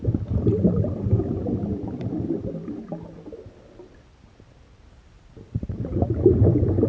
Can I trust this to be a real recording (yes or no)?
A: yes